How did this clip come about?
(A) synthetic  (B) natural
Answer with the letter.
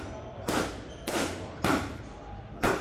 A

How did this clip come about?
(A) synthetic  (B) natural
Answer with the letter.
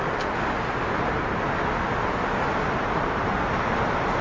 B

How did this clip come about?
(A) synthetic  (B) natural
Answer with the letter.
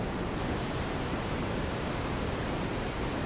B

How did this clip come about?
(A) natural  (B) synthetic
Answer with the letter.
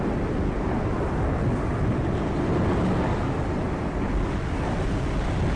A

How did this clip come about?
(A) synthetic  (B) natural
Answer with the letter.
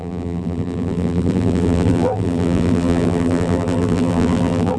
A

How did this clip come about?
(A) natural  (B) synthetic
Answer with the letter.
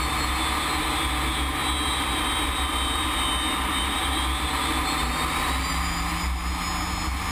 A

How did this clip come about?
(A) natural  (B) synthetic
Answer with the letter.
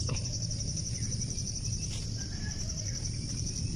B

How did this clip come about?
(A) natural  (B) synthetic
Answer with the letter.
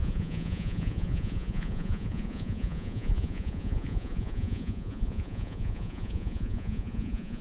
B